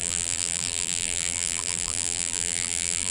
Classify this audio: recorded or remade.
remade